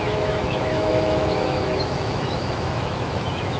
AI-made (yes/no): yes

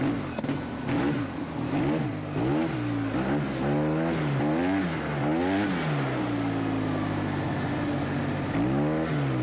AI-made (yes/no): no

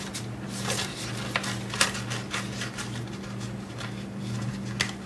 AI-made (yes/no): no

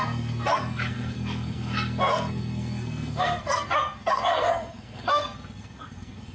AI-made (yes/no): yes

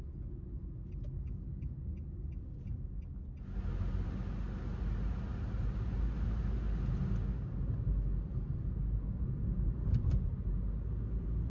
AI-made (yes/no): no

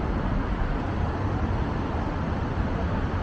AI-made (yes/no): no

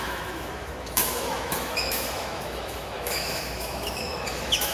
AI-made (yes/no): yes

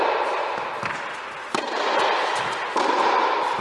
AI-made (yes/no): no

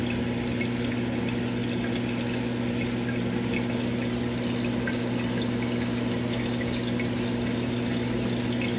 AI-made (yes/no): no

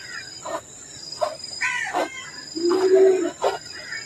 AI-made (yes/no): no